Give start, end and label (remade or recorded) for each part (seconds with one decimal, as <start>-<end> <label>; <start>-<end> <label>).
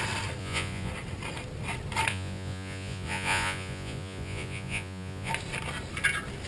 0.0-0.4 recorded; 0.4-0.9 remade; 0.9-2.1 recorded; 2.1-5.3 remade; 5.3-6.5 recorded